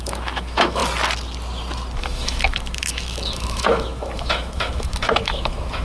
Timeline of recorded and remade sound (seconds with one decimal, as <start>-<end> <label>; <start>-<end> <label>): 0.0-0.8 remade; 0.8-2.0 recorded; 2.0-5.8 remade